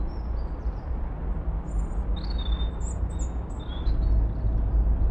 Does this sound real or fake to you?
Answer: real